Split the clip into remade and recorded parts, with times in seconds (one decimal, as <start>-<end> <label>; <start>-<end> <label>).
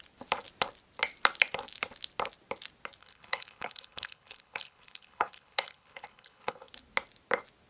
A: 0.0-3.0 recorded; 3.0-6.7 remade; 6.7-7.7 recorded